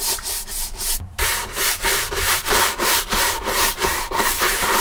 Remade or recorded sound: remade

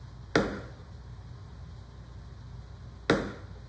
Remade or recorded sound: recorded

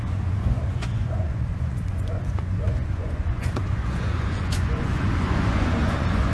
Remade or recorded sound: remade